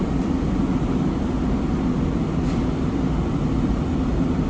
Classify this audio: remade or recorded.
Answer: recorded